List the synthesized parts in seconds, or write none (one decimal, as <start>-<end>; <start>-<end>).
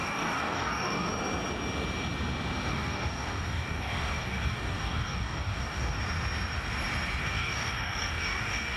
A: 0.0-1.1; 2.7-6.0; 7.2-8.8